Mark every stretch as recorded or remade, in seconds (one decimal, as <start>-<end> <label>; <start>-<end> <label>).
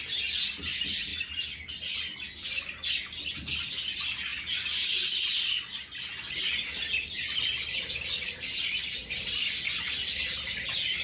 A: 0.0-11.0 recorded